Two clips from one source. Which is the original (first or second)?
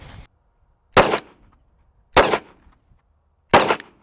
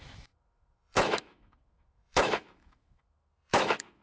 first